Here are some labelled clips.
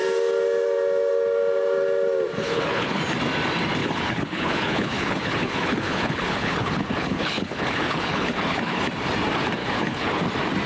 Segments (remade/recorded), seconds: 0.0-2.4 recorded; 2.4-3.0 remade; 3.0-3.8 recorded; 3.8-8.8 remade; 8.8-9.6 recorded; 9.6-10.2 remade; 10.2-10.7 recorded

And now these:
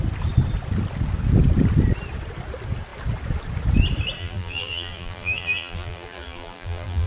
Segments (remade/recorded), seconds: 0.0-4.2 recorded; 4.2-7.1 remade

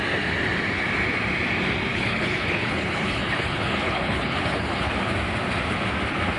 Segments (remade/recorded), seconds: 0.0-1.9 recorded; 1.9-4.9 remade; 4.9-6.4 recorded

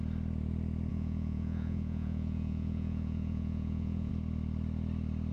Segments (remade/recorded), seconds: 0.0-0.9 recorded; 0.9-4.1 remade; 4.1-5.3 recorded

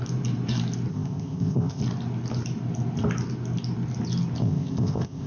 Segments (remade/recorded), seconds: 0.0-0.9 recorded; 0.9-1.8 remade; 1.8-4.4 recorded; 4.4-5.3 remade

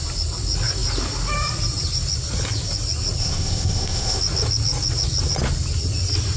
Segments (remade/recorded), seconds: 0.0-3.2 recorded; 3.2-4.2 remade; 4.2-6.4 recorded

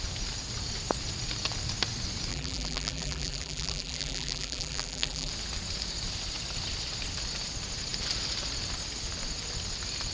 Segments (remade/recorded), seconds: 0.0-2.3 recorded; 2.3-5.3 remade; 5.3-10.1 recorded